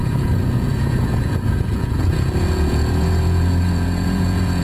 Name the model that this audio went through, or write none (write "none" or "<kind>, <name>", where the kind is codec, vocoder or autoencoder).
vocoder, Vocos